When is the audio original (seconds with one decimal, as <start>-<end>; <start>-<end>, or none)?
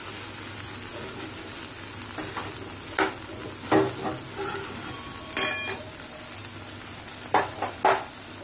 0.0-8.4